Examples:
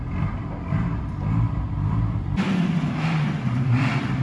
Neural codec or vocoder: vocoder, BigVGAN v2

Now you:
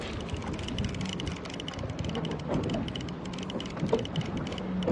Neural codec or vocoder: none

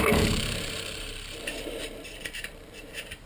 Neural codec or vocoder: vocoder, BigVGAN v2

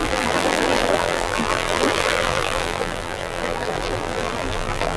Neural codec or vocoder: vocoder, BigVGAN v2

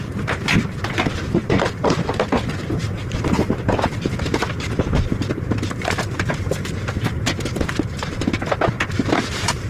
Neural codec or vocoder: vocoder, BigVGAN v2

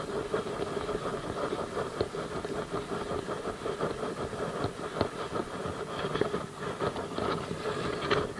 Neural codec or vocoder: none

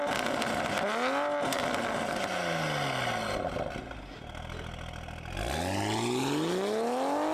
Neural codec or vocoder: none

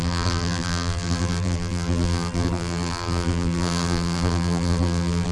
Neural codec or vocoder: vocoder, BigVGAN v2